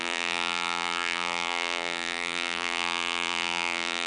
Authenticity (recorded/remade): remade